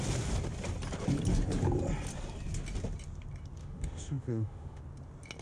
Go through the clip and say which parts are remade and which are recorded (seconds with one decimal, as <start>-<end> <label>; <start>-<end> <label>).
0.0-3.6 recorded; 3.6-4.8 remade; 4.8-5.4 recorded